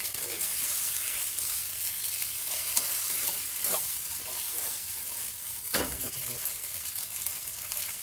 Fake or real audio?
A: fake